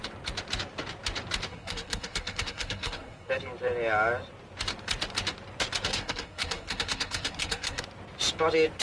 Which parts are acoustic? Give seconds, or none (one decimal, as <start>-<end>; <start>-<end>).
0.0-1.5; 3.3-5.9; 7.8-8.8